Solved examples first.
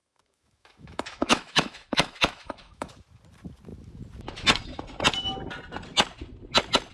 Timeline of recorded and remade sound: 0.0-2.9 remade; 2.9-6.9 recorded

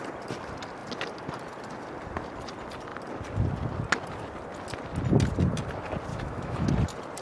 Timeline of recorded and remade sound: 0.0-6.1 recorded; 6.1-6.7 remade; 6.7-7.2 recorded

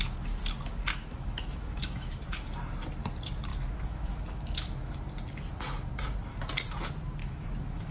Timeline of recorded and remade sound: 0.0-0.9 recorded; 0.9-2.5 remade; 2.5-3.5 recorded; 3.5-4.9 remade; 4.9-7.2 recorded; 7.2-7.9 remade

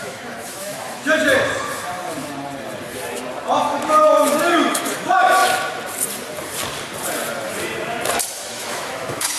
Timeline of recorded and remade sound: 0.0-1.3 remade; 1.3-4.0 recorded; 4.0-5.4 remade; 5.4-8.5 recorded; 8.5-9.4 remade